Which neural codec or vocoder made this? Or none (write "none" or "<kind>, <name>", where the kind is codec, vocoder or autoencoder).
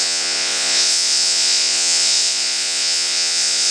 vocoder, Vocos